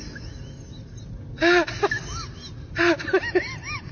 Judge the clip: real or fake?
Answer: real